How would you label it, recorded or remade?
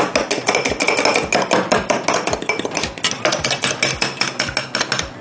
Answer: recorded